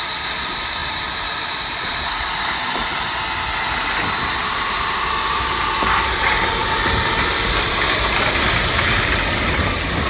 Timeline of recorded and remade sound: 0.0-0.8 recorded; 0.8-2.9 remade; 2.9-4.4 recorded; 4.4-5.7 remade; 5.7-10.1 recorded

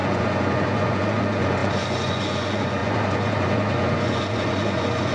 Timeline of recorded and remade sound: 0.0-5.1 remade

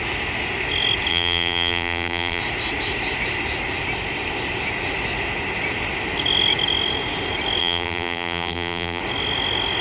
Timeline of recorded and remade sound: 0.0-1.1 recorded; 1.1-2.4 remade; 2.4-7.6 recorded; 7.6-9.0 remade; 9.0-9.8 recorded